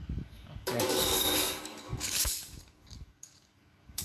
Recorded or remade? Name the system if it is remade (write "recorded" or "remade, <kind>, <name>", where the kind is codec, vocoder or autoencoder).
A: remade, codec, DAC